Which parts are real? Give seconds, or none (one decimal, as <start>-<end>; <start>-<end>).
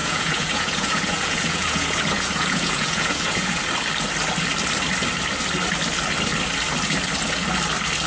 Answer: 3.6-8.1